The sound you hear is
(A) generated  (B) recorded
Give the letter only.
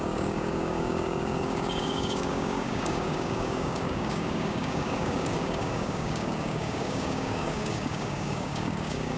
A